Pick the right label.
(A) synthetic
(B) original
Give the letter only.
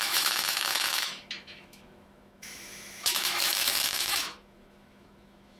A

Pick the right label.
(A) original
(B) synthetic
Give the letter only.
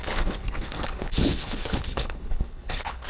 B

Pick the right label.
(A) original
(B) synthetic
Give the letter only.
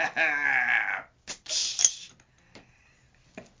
A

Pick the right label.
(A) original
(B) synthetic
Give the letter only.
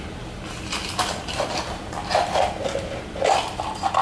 A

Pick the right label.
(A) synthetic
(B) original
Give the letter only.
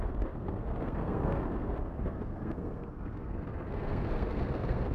A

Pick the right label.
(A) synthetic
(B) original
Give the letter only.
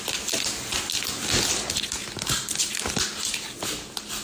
B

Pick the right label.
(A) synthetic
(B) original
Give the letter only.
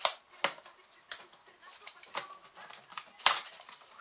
B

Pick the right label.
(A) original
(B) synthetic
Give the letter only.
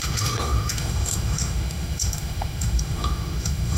B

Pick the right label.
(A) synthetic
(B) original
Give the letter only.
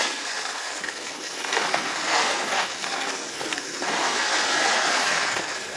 A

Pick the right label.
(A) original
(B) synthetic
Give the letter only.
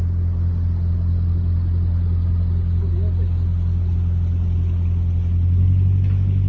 A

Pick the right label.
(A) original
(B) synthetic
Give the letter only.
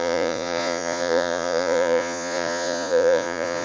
B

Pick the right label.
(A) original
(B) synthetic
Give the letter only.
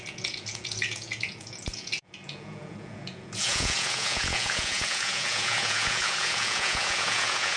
B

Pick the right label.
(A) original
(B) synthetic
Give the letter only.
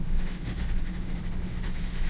B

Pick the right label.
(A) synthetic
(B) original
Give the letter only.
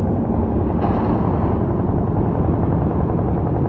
B